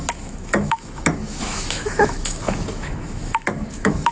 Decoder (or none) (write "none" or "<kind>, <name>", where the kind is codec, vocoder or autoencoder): autoencoder, DAC-VAE